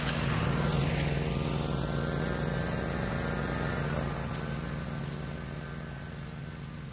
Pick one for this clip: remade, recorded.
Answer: recorded